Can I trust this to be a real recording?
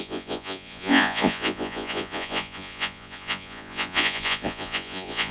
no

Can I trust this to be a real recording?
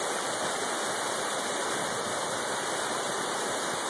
yes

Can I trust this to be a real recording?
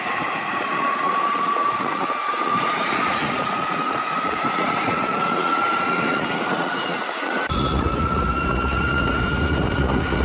no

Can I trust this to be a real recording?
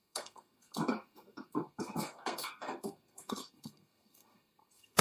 no